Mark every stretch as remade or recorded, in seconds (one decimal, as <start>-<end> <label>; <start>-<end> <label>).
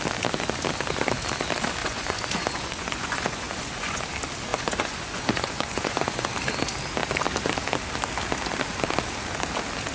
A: 0.0-1.8 recorded; 1.8-4.0 remade; 4.0-4.5 recorded; 4.5-6.3 remade; 6.3-9.9 recorded